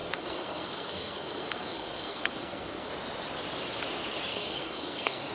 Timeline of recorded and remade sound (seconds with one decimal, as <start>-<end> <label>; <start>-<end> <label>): 0.0-2.9 remade; 2.9-4.3 recorded; 4.3-5.3 remade